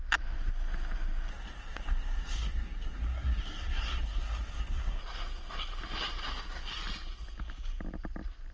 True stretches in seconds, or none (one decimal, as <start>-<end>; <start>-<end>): 0.0-1.3; 5.0-8.5